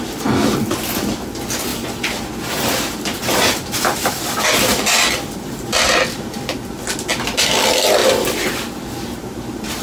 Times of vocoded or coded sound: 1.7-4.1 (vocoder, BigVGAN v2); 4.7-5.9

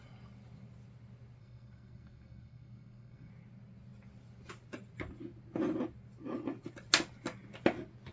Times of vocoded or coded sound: 1.4-3.3 (codec, SNAC)